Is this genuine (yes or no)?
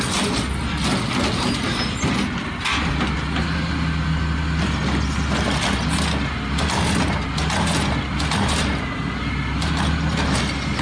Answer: yes